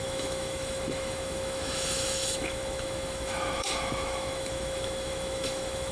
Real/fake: fake